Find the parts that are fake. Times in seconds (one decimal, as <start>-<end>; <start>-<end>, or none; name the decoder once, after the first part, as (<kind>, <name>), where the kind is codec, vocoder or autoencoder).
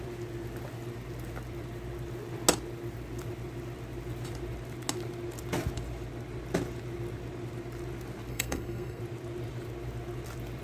8.3-9.0 (codec, SNAC)